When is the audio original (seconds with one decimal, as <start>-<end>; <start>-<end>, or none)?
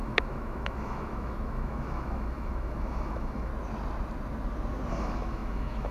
3.5-4.9